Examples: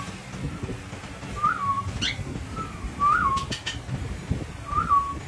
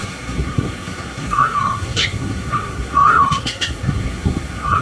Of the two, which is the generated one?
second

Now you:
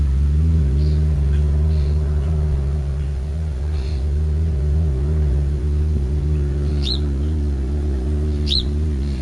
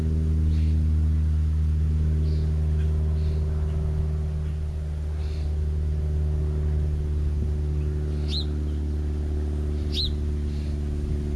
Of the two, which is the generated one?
first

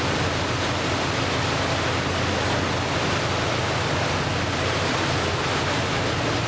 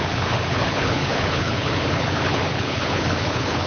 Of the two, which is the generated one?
second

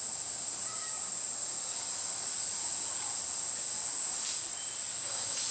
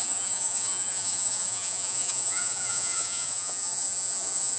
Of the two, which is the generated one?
second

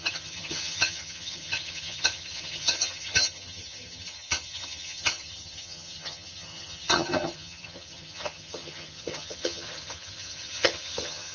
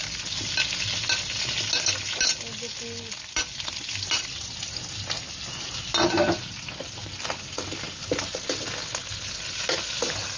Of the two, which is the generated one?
first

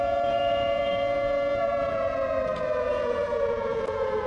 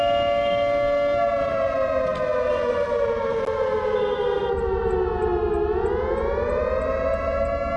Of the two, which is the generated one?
first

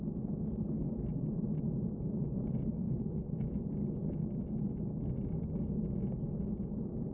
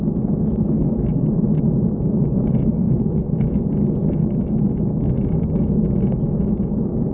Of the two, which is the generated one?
second